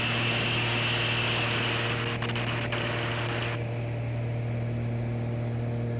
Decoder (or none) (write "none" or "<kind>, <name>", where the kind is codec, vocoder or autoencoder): none